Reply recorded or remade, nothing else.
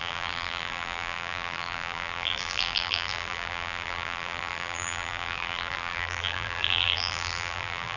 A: remade